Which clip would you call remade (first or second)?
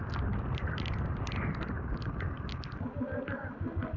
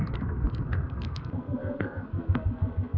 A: second